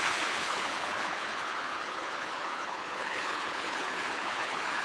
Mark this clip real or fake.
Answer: fake